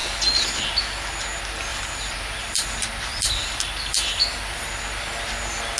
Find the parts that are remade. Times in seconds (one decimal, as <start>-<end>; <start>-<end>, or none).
0.0-0.6; 1.7-4.6

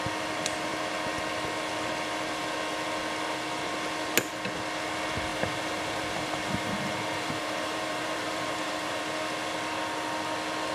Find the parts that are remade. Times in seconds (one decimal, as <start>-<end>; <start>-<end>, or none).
5.3-9.0

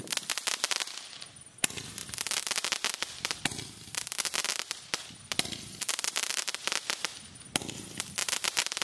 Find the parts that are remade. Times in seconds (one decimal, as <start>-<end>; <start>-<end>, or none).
none

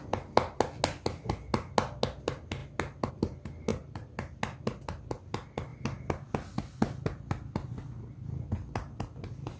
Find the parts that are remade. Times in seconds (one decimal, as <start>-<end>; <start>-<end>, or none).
none

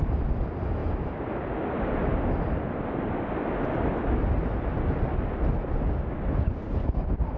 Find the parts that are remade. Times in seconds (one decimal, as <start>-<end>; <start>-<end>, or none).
none

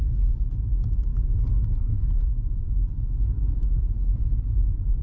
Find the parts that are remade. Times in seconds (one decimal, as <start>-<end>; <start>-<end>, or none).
0.0-5.0

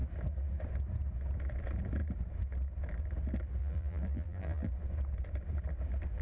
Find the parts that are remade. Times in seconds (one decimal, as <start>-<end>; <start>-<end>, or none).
3.6-4.7